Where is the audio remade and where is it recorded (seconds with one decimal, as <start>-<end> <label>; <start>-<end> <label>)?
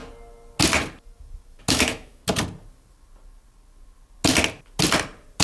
0.0-1.7 recorded; 1.7-2.2 remade; 2.2-5.4 recorded